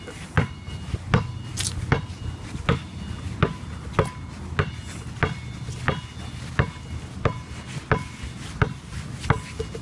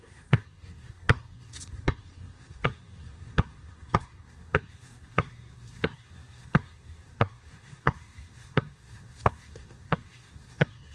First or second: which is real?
first